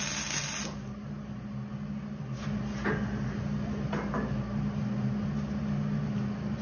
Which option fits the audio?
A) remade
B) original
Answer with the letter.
B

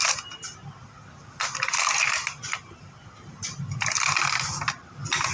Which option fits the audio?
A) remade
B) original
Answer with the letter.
B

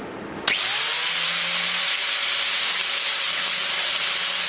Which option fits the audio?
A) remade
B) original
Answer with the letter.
B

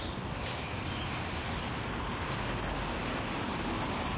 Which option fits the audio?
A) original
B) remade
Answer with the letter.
A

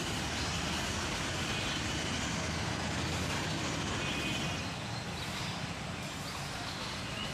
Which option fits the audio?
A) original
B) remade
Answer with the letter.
A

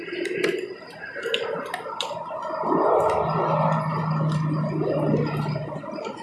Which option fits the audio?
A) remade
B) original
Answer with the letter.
B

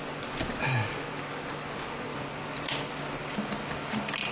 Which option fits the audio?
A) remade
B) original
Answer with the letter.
B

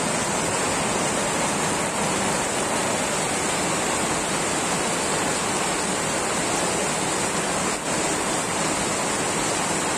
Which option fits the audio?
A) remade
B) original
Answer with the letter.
B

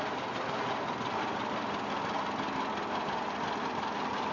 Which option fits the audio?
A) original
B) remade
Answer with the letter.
A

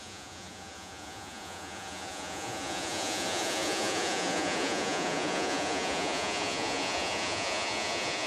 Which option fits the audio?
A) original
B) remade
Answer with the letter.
B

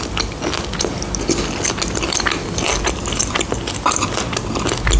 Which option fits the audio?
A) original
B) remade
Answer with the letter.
A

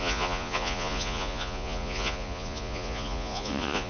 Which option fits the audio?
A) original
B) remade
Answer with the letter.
B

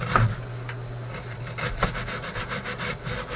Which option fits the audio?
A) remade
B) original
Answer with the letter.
B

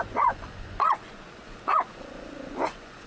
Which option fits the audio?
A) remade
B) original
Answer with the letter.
A